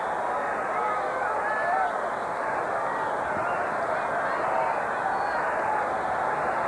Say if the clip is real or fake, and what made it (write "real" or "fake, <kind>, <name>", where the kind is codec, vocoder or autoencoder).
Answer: real